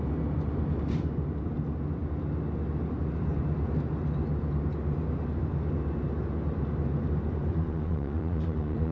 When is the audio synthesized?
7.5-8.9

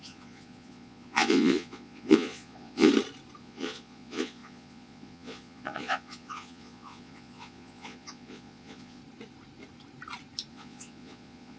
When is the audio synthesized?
0.0-2.9; 3.4-9.0; 10.5-11.6